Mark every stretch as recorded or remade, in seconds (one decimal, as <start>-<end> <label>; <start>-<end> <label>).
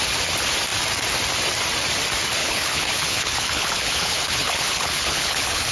0.0-2.4 recorded; 2.4-5.7 remade